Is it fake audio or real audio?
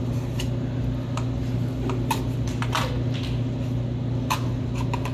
real